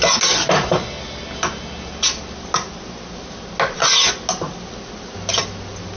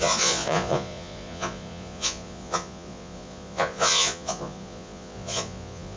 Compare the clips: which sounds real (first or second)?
first